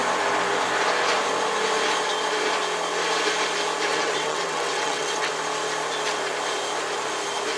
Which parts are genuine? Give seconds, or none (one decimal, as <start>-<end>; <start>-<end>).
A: 0.0-3.9; 5.3-7.6